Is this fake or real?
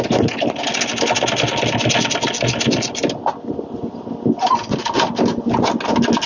real